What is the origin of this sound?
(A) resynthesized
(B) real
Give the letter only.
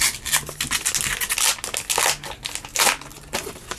B